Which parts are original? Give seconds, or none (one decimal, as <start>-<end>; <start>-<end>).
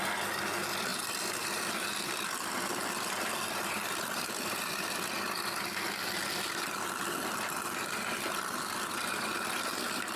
0.0-10.2